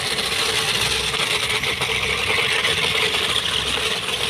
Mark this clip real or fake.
real